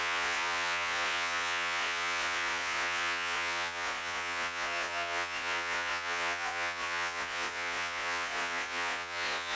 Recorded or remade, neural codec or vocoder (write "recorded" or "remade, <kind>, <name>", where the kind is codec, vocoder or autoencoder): remade, vocoder, Vocos